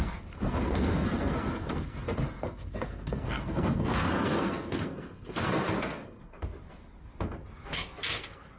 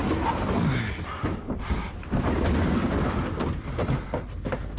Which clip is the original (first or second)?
second